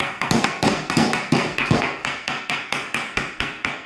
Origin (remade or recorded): remade